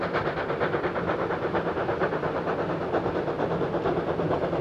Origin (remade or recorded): recorded